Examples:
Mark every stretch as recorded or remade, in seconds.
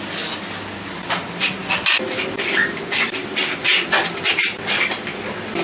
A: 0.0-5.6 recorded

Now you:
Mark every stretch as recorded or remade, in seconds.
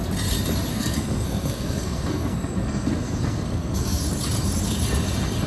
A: 0.0-0.7 recorded; 0.7-4.0 remade; 4.0-5.5 recorded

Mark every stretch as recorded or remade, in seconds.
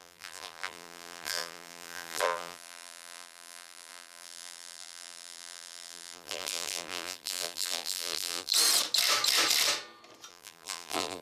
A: 0.0-8.5 remade; 8.5-10.3 recorded; 10.3-11.2 remade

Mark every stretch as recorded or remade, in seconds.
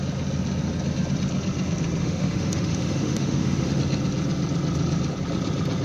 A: 0.0-2.0 recorded; 2.0-3.8 remade; 3.8-5.8 recorded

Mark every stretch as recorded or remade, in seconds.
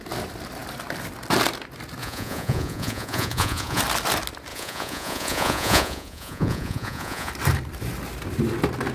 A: 0.0-2.0 recorded; 2.0-3.8 remade; 3.8-4.5 recorded; 4.5-7.3 remade; 7.3-8.9 recorded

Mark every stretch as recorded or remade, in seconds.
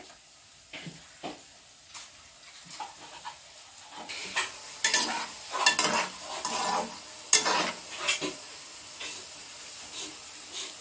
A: 0.0-10.8 recorded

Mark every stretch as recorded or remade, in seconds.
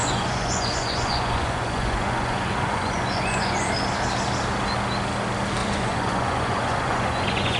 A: 0.0-3.7 remade; 3.7-5.6 recorded; 5.6-7.6 remade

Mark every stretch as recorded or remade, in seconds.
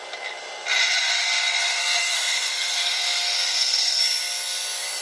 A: 0.0-1.8 recorded; 1.8-4.0 remade; 4.0-5.0 recorded